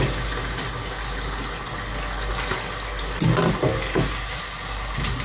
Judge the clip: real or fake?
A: real